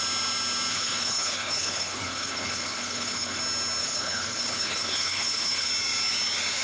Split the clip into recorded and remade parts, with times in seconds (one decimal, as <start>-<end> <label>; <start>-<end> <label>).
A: 0.0-0.7 recorded; 0.7-3.4 remade; 3.4-3.8 recorded; 3.8-5.7 remade; 5.7-6.6 recorded